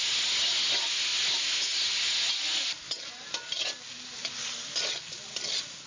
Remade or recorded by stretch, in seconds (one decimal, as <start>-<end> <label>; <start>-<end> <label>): 0.0-5.9 recorded